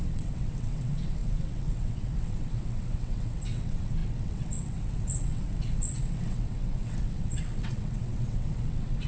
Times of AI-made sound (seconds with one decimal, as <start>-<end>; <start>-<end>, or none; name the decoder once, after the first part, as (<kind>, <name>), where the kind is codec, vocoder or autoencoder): 0.0-9.1 (vocoder, WaveNeXt)